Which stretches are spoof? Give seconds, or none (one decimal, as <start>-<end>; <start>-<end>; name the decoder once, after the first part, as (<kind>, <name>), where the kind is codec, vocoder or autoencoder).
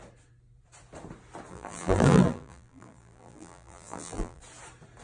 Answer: 1.5-4.4 (vocoder, BigVGAN v2)